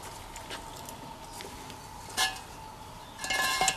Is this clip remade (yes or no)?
no